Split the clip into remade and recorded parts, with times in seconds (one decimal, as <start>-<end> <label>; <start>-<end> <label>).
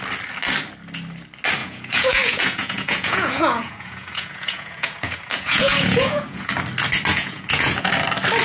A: 0.0-1.6 recorded; 1.6-6.5 remade; 6.5-7.1 recorded; 7.1-7.9 remade; 7.9-8.4 recorded